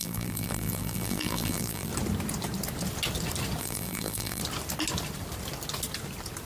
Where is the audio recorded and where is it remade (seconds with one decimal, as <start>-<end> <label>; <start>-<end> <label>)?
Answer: 0.0-1.9 remade; 1.9-3.6 recorded; 3.6-4.4 remade; 4.4-6.5 recorded